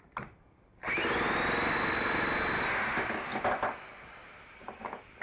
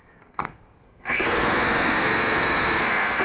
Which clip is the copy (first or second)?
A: second